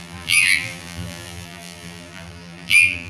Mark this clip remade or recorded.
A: remade